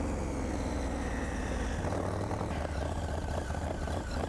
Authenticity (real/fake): real